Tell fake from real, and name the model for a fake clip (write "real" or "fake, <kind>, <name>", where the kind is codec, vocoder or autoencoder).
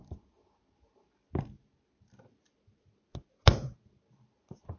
real